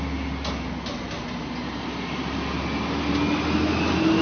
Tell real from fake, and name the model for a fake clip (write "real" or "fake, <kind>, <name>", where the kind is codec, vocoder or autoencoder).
real